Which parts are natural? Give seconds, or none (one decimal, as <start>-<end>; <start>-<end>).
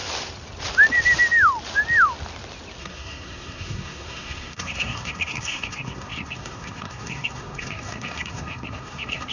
0.0-2.8